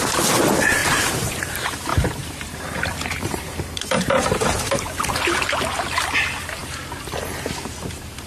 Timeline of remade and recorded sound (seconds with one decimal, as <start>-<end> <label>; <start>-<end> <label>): 0.0-0.8 recorded; 0.8-1.4 remade; 1.4-1.9 recorded; 1.9-4.7 remade; 4.7-8.3 recorded